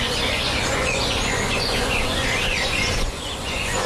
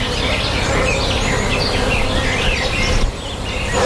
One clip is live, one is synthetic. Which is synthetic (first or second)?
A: first